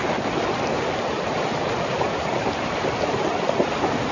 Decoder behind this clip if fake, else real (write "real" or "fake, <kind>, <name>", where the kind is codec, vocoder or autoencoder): real